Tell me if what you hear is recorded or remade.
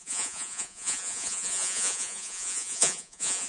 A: remade